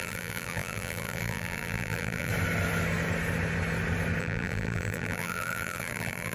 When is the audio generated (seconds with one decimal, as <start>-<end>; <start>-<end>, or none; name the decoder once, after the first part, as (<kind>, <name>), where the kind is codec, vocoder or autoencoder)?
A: 0.0-2.3 (vocoder, BigVGAN v2); 4.2-6.3